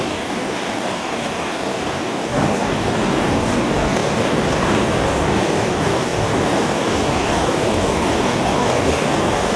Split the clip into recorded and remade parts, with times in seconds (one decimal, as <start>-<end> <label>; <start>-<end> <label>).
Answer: 0.0-9.6 remade